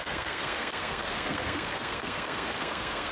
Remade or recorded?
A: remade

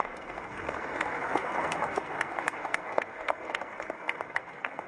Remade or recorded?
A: remade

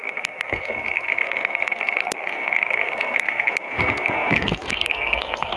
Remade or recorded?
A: remade